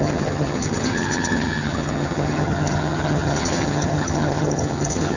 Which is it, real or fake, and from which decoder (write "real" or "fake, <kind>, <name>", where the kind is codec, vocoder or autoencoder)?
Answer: fake, vocoder, HiFi-GAN